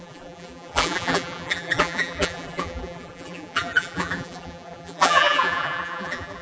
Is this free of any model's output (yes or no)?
no